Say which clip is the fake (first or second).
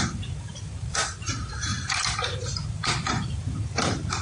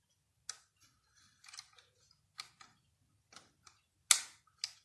first